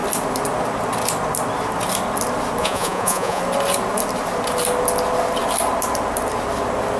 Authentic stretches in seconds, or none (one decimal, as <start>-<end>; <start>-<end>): 0.0-2.6; 3.4-7.0